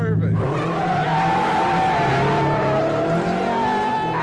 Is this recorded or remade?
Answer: recorded